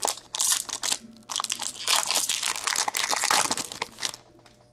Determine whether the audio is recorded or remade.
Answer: recorded